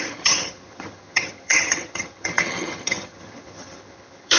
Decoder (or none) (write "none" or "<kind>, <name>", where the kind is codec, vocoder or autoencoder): vocoder, HiFi-GAN